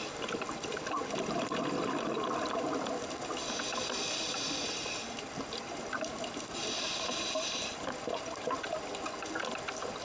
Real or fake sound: real